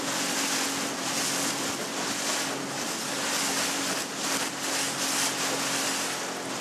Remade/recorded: recorded